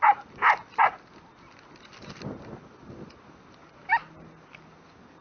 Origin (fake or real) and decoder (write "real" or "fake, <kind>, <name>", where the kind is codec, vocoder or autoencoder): real